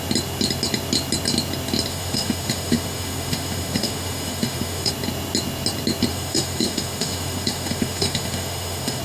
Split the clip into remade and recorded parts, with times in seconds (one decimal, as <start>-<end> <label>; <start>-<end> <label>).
0.0-1.9 recorded; 1.9-4.9 remade; 4.9-6.1 recorded; 6.1-9.0 remade